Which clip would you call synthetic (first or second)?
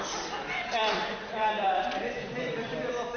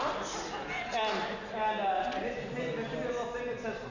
first